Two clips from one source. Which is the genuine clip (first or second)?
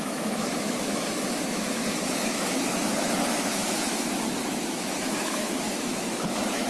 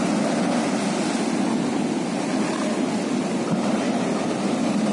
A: second